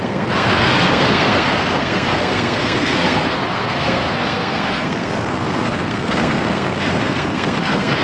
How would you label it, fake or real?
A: fake